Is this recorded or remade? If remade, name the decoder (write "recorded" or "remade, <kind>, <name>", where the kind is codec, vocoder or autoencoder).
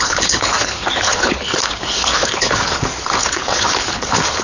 remade, codec, HILCodec